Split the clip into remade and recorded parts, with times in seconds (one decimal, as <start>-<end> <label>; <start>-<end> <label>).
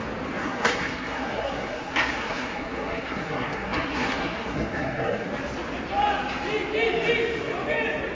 0.0-0.4 recorded; 0.4-5.3 remade; 5.3-8.1 recorded